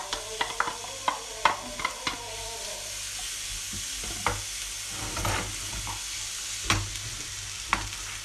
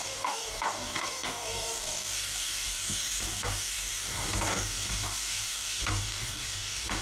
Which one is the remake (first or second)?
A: second